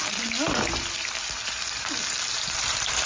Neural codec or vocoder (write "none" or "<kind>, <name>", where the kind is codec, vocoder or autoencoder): none